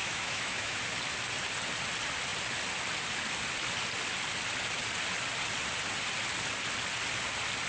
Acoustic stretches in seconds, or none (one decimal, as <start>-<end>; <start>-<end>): 0.8-7.7